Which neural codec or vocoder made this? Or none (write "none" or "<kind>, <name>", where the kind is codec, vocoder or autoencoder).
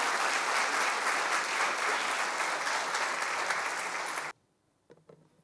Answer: none